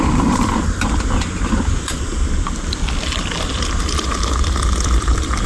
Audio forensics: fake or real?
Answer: fake